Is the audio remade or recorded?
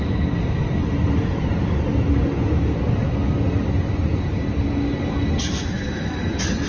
recorded